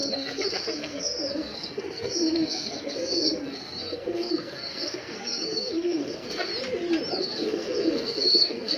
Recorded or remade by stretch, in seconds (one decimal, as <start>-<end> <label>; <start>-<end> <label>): 0.0-6.5 remade; 6.5-7.2 recorded; 7.2-8.8 remade